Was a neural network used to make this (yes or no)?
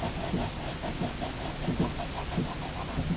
no